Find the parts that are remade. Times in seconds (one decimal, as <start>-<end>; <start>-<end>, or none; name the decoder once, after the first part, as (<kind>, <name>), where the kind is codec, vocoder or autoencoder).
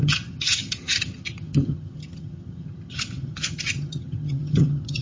0.0-5.0 (vocoder, HiFi-GAN)